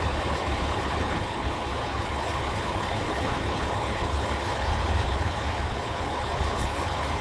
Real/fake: fake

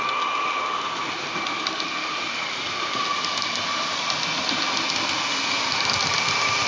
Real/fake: real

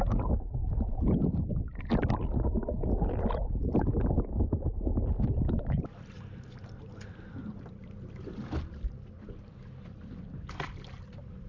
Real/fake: real